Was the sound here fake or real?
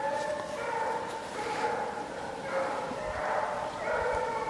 real